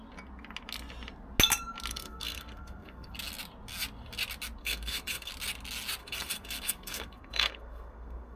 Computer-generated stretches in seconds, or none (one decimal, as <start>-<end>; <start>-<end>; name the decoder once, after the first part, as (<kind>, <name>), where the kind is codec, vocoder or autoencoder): 1.9-3.1 (codec, SNAC); 4.6-5.3; 6.0-8.4